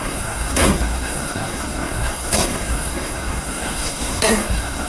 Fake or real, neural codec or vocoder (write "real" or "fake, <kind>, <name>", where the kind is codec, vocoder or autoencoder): fake, codec, SNAC